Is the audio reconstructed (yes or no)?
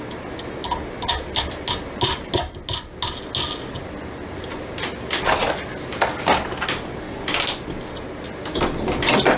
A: no